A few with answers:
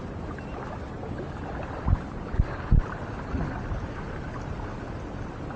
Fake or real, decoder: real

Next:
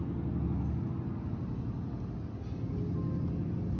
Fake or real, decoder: real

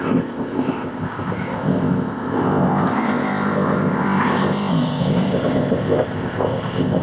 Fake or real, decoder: fake, codec, ZipCodec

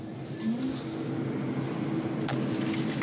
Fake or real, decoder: real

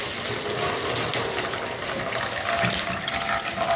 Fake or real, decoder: real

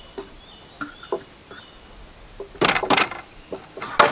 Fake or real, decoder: real